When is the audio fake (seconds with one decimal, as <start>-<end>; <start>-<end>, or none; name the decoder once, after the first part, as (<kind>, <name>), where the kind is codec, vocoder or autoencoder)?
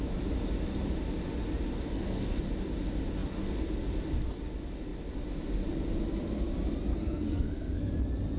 1.9-2.4 (codec, SNAC); 6.9-7.9